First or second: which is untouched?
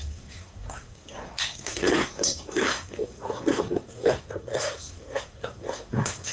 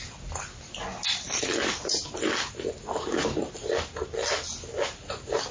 second